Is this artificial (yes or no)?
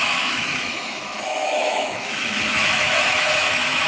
yes